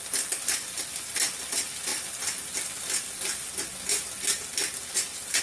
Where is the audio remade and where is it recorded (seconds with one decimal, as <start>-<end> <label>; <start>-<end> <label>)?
0.0-5.4 recorded